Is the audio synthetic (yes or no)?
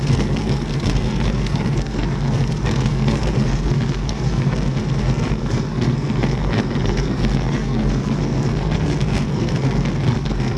yes